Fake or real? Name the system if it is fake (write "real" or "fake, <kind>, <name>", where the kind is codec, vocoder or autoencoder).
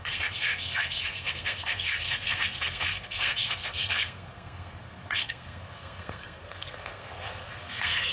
fake, codec, SNAC